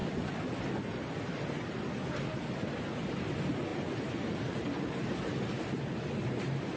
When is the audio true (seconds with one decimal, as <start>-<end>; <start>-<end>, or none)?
0.0-6.8

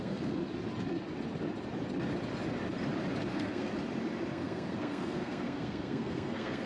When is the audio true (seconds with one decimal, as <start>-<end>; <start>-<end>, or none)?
0.4-3.3; 3.7-4.3

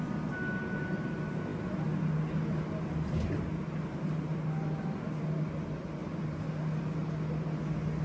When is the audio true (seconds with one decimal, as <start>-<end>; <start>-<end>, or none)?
0.0-8.0

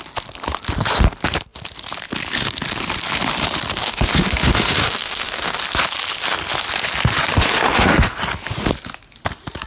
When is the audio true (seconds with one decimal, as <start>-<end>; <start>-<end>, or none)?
0.0-3.8; 5.6-7.4; 8.2-9.7

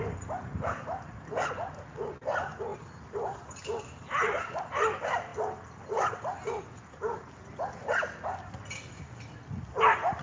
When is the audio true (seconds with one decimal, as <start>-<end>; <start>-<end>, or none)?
0.0-10.2

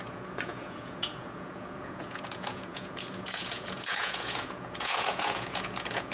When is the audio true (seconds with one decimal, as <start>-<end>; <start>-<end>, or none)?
none